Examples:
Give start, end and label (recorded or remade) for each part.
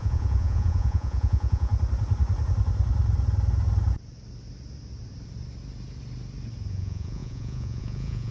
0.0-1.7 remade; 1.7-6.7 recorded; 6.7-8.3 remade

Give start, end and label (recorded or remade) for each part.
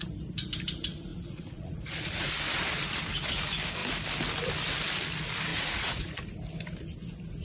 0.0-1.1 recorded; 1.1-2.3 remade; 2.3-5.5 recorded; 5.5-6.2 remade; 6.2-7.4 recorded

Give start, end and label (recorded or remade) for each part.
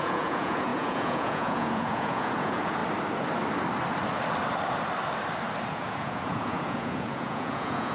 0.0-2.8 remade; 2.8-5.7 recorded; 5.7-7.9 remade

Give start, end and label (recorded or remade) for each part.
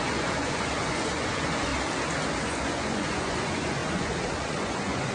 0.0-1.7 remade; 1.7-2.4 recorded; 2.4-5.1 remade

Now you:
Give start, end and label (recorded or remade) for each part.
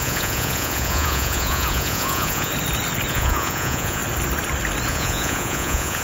0.0-2.5 remade; 2.5-3.1 recorded; 3.1-4.0 remade; 4.0-4.9 recorded; 4.9-6.0 remade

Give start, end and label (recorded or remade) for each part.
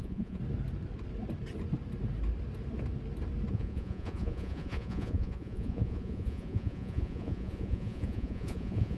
0.0-0.4 remade; 0.4-3.5 recorded; 3.5-9.0 remade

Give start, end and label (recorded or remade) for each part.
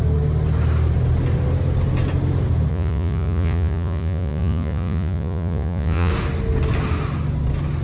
0.0-2.7 recorded; 2.7-6.1 remade; 6.1-7.8 recorded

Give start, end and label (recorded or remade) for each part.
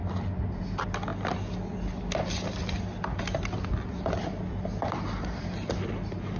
0.0-6.4 recorded